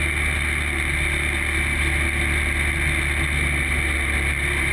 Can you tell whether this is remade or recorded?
recorded